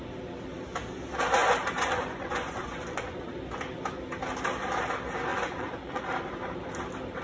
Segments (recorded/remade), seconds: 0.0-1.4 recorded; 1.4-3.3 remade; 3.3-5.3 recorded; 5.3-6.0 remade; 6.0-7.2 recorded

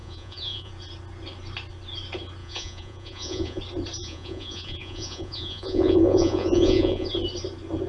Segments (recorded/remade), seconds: 0.0-0.7 remade; 0.7-2.4 recorded; 2.4-3.6 remade; 3.6-4.0 recorded; 4.0-7.1 remade; 7.1-7.9 recorded

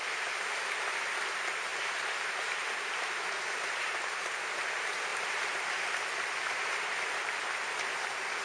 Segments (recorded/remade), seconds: 0.0-8.4 recorded

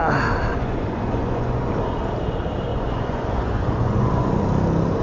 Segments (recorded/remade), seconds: 0.0-0.5 recorded; 0.5-1.7 remade; 1.7-2.7 recorded; 2.7-4.4 remade; 4.4-5.0 recorded